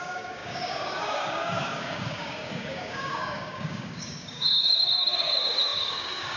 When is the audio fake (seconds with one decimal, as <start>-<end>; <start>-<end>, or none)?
0.0-6.4